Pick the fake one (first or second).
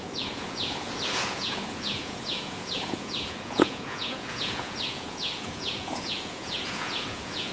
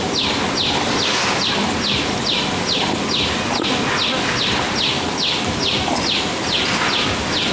first